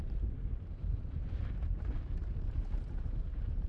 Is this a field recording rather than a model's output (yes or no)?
no